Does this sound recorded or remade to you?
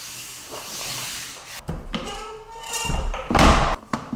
remade